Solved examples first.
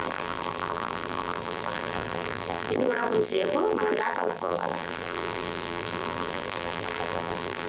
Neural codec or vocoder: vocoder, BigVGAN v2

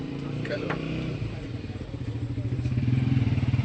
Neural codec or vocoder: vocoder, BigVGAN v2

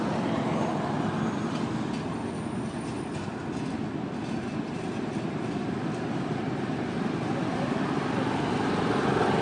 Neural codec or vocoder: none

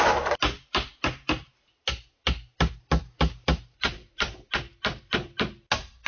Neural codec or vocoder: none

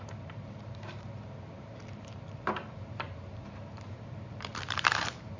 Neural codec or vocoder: vocoder, BigVGAN v2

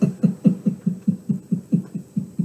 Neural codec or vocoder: none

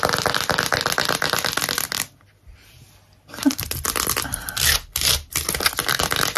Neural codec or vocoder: none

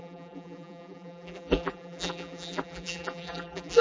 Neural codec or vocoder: vocoder, BigVGAN v2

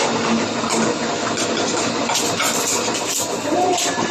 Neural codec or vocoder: none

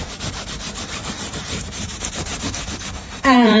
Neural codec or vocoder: vocoder, BigVGAN v2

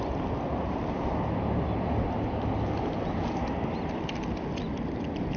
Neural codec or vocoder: none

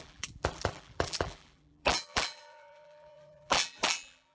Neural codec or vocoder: vocoder, BigVGAN v2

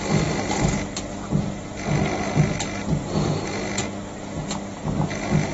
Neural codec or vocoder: none